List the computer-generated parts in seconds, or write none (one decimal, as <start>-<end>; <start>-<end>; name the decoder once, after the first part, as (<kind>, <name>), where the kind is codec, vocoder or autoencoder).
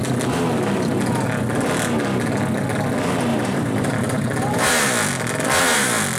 3.3-4.7 (vocoder, BigVGAN v2)